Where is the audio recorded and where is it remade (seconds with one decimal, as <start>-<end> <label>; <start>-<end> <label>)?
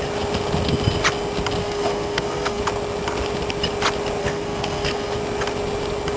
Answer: 0.0-1.6 recorded; 1.6-2.6 remade; 2.6-4.2 recorded; 4.2-5.2 remade; 5.2-6.2 recorded